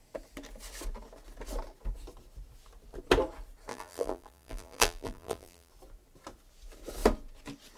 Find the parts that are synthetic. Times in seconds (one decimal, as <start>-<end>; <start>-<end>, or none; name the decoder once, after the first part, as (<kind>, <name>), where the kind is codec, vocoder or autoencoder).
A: 3.7-5.7 (vocoder, BigVGAN v2)